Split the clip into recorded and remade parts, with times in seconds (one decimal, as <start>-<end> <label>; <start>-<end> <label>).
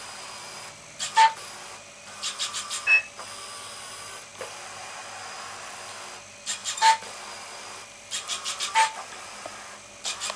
0.0-6.6 recorded; 6.6-8.7 remade; 8.7-10.4 recorded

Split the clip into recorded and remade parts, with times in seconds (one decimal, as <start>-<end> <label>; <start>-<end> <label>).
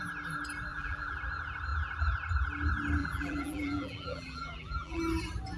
0.0-0.7 recorded; 0.7-1.2 remade; 1.2-3.0 recorded; 3.0-5.0 remade; 5.0-5.6 recorded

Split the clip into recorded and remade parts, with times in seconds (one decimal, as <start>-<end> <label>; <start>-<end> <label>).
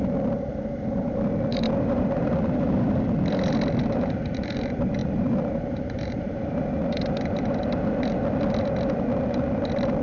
0.0-1.5 recorded; 1.5-2.9 remade; 2.9-5.0 recorded; 5.0-6.6 remade; 6.6-10.0 recorded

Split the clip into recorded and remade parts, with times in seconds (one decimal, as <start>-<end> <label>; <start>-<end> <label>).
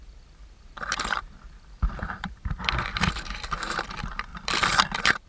0.0-3.1 remade; 3.1-4.3 recorded; 4.3-5.3 remade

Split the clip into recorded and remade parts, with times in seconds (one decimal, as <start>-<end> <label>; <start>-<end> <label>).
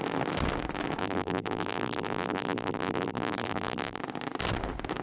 0.0-1.0 recorded; 1.0-4.0 remade; 4.0-5.0 recorded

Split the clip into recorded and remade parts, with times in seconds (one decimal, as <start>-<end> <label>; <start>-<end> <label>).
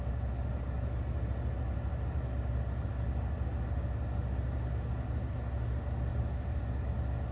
0.0-7.3 recorded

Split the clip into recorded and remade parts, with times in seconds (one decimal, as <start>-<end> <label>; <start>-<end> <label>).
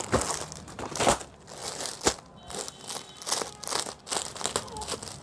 0.0-5.2 recorded